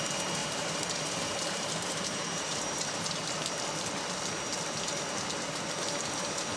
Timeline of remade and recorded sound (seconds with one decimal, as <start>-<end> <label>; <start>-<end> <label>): 0.0-0.4 recorded; 0.4-3.6 remade; 3.6-6.6 recorded